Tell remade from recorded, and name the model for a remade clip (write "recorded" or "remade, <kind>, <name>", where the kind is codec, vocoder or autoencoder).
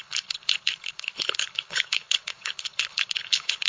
remade, codec, HILCodec